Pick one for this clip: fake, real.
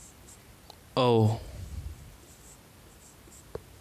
real